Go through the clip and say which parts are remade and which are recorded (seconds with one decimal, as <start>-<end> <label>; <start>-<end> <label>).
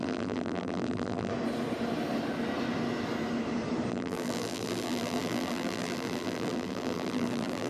0.0-1.3 remade; 1.3-3.9 recorded; 3.9-7.7 remade